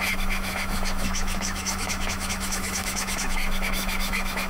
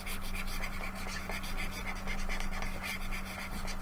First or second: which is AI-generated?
first